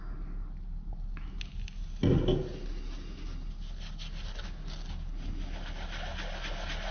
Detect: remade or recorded recorded